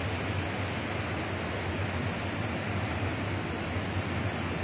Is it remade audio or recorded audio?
recorded